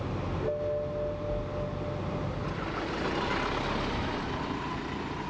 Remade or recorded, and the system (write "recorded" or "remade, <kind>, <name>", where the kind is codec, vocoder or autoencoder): recorded